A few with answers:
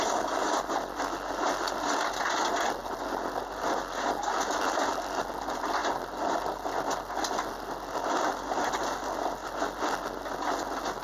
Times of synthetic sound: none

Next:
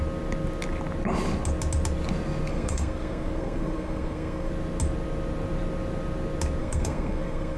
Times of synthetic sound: 2.5-4.5 (codec, SNAC); 6.6-7.6

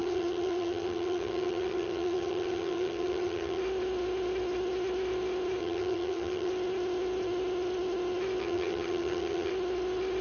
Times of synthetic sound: 0.0-3.6 (vocoder, HiFi-GAN); 5.6-6.5; 8.4-9.5

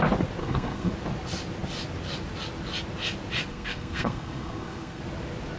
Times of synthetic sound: 0.4-0.9 (codec, SNAC); 3.5-5.0

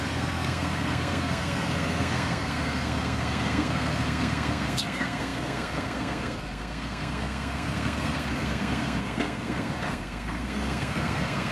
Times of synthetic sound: 0.0-11.5 (codec, SNAC)